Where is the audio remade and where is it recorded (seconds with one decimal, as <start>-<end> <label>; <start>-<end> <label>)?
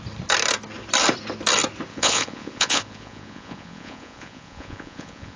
0.0-1.9 recorded; 1.9-5.4 remade